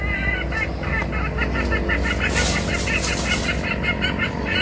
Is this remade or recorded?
recorded